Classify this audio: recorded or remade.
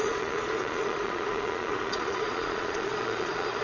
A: remade